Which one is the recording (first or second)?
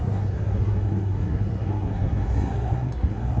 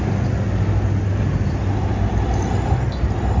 second